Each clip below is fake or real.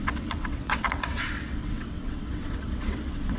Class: fake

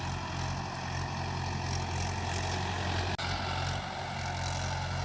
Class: real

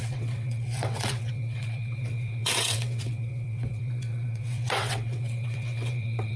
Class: fake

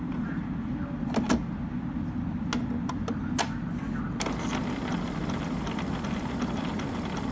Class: real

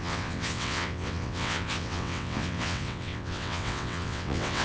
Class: fake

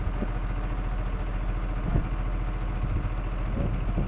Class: real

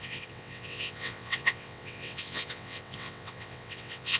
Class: fake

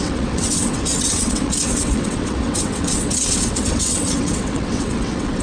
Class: fake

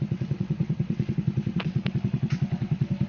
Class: fake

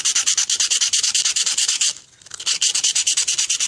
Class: real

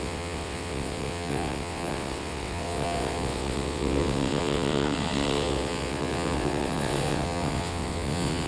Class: fake